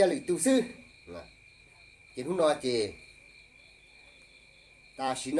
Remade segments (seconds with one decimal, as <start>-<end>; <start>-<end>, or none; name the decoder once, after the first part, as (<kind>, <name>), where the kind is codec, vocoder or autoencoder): 0.0-5.4 (vocoder, BigVGAN v2)